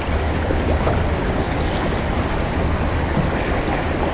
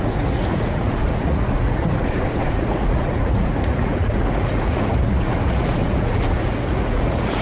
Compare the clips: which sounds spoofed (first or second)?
second